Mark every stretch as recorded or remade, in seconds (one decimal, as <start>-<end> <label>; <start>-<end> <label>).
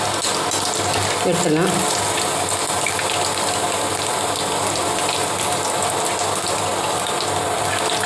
0.0-8.1 recorded